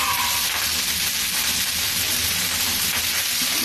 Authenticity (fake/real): fake